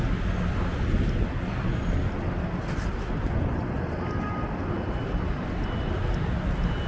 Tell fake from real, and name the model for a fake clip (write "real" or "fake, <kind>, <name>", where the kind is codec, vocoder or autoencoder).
real